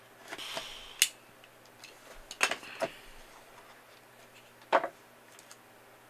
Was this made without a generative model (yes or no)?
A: yes